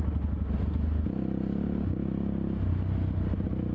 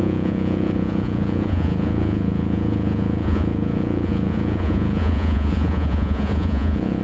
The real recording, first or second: first